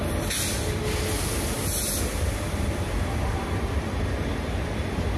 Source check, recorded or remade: recorded